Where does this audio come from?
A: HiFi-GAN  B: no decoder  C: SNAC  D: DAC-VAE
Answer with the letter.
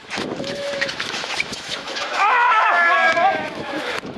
D